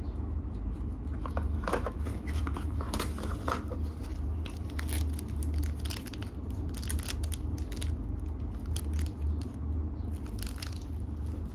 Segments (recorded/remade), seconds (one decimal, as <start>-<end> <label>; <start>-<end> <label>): 0.0-3.3 remade; 3.3-11.5 recorded

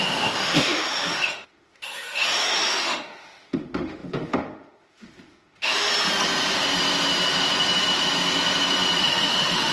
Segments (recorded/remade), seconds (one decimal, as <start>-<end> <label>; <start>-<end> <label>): 0.0-5.9 remade; 5.9-9.0 recorded; 9.0-9.7 remade

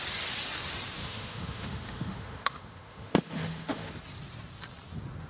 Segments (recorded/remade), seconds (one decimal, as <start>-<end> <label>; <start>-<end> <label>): 0.0-1.0 recorded; 1.0-3.9 remade; 3.9-5.3 recorded